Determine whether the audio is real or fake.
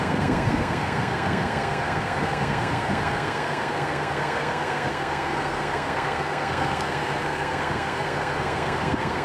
fake